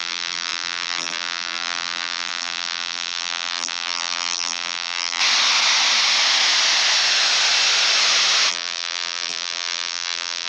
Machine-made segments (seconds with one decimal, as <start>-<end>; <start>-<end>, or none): 0.0-5.2; 8.5-10.5